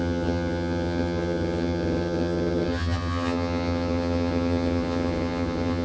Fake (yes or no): yes